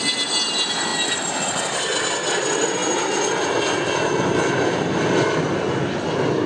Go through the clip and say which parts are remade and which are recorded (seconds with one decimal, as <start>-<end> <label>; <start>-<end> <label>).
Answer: 0.0-6.5 recorded